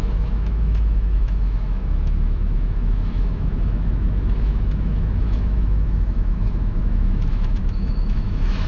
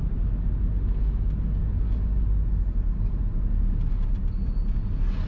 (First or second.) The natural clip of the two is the second